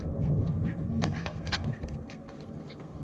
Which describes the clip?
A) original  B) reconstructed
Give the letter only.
B